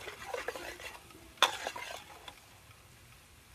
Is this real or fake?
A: real